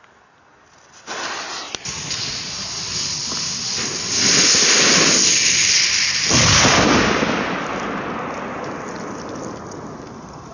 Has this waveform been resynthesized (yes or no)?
no